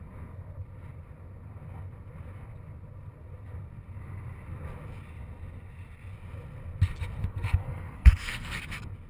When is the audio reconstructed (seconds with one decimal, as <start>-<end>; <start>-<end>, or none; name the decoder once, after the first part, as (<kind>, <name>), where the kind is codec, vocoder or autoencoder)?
7.2-8.6 (codec, SNAC)